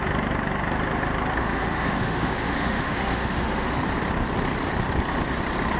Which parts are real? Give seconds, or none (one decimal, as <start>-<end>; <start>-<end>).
0.0-1.4; 3.7-5.8